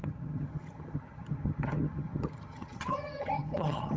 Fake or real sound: fake